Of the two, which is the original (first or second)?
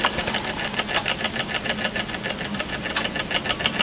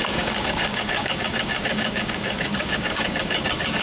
first